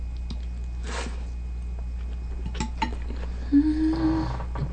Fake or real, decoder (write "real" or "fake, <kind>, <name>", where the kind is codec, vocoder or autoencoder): real